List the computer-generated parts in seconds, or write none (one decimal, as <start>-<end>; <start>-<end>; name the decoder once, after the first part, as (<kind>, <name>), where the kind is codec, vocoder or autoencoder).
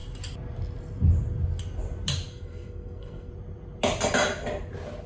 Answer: 2.3-3.3 (codec, SNAC)